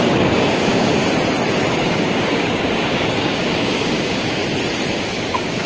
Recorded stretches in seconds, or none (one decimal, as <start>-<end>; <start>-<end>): 1.0-1.7; 4.4-4.9